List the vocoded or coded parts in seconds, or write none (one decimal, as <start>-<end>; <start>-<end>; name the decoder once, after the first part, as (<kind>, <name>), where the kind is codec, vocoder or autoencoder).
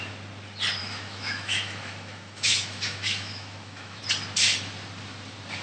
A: 0.8-4.0 (autoencoder, DAC-VAE)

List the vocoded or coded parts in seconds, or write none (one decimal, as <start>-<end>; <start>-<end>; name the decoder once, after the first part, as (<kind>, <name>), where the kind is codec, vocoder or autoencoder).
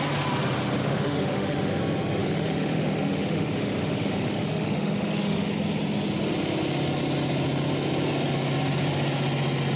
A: 0.8-1.8 (autoencoder, DAC-VAE); 2.2-5.5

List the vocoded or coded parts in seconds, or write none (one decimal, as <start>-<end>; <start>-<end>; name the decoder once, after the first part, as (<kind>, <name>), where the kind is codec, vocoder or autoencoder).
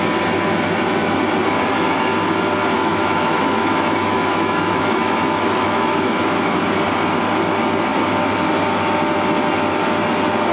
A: 2.8-6.6 (autoencoder, DAC-VAE)